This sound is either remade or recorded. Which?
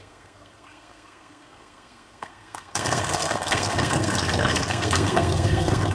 remade